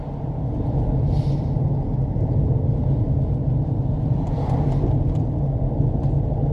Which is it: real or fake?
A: real